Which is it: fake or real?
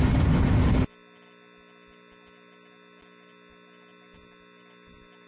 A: real